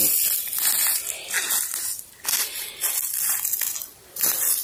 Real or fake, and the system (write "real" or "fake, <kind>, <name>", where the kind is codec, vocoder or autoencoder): real